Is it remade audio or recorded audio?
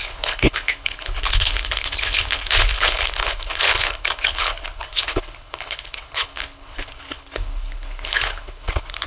remade